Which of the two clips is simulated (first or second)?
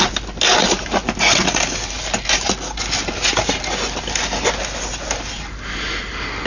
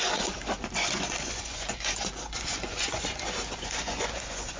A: second